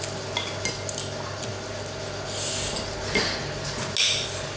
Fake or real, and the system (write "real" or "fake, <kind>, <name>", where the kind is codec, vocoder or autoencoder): real